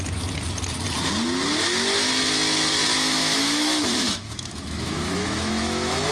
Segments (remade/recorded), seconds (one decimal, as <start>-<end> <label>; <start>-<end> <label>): 0.0-2.9 recorded; 2.9-6.1 remade